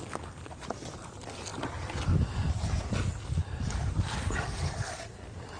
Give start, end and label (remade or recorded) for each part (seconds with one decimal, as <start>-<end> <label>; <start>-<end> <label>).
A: 0.0-3.4 recorded; 3.4-4.6 remade; 4.6-5.6 recorded